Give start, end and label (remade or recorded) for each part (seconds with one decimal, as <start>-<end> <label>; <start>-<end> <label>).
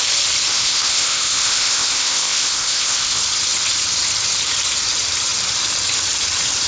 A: 0.0-0.5 recorded; 0.5-3.2 remade; 3.2-6.7 recorded